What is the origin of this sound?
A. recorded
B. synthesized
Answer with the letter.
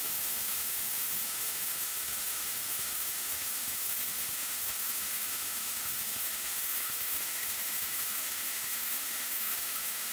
B